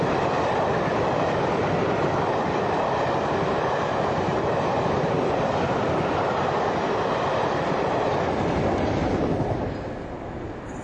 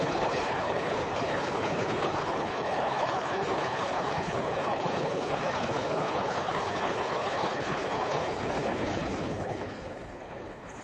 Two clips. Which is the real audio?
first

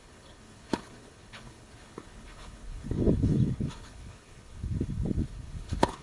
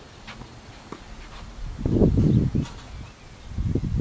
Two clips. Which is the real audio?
second